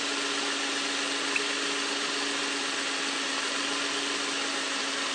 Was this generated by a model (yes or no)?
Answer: no